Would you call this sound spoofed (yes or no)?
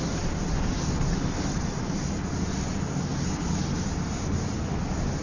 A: no